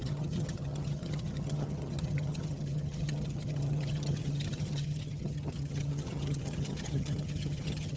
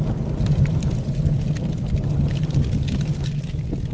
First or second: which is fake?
first